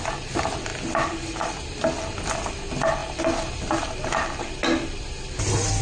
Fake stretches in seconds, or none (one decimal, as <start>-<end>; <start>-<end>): 0.7-1.5